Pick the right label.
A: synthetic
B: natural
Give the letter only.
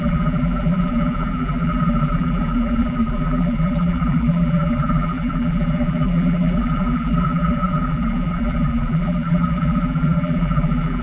A